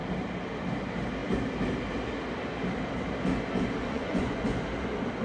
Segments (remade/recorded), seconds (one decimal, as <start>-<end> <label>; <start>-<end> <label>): 0.0-3.8 recorded; 3.8-4.6 remade; 4.6-5.2 recorded